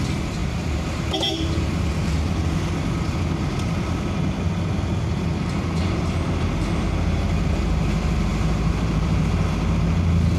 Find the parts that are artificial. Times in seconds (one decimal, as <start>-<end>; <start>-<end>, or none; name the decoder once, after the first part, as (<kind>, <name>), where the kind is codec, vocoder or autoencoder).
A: 0.4-2.3 (vocoder, BigVGAN v2); 8.3-9.4